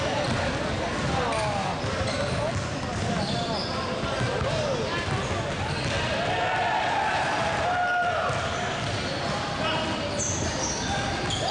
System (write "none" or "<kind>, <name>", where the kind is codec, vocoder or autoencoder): none